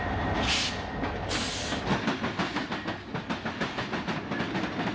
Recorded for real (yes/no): yes